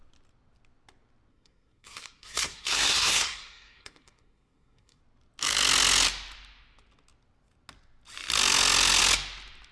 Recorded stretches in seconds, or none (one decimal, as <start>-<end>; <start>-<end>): 0.0-1.3; 5.0-9.7